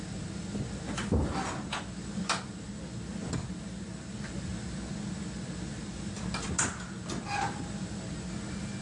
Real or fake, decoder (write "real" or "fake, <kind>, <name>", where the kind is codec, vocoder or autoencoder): real